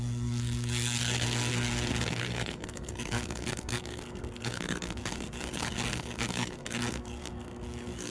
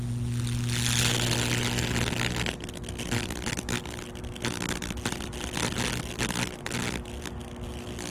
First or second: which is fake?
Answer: first